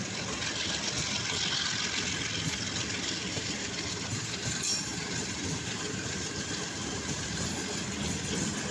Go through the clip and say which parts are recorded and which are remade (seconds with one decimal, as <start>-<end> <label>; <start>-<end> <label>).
0.0-3.3 recorded; 3.3-4.5 remade; 4.5-4.9 recorded; 4.9-7.5 remade; 7.5-8.7 recorded